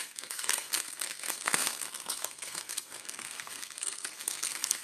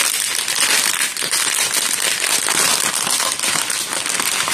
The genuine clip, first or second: second